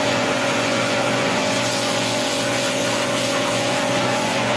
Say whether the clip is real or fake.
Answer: fake